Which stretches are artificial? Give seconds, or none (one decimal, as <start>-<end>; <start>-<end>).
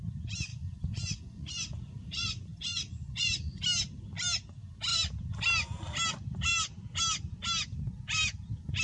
0.5-3.6